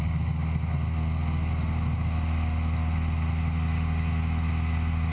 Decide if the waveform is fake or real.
real